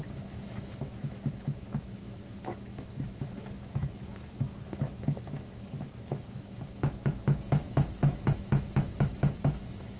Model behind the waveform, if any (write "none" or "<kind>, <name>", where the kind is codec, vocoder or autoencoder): autoencoder, DAC-VAE